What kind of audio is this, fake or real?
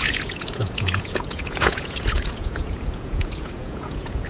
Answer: fake